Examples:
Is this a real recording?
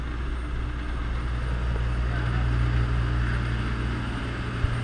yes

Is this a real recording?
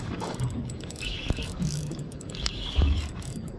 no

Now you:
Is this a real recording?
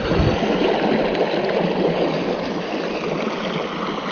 yes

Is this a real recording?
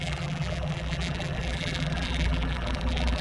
no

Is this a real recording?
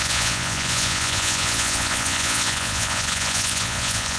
no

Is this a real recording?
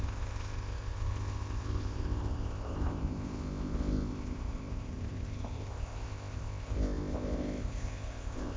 no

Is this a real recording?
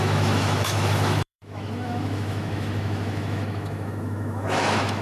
no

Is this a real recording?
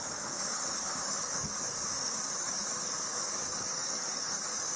no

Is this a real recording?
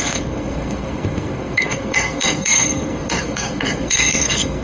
no